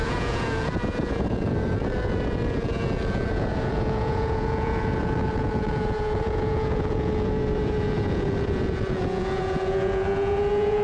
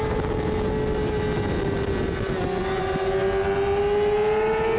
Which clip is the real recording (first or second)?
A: second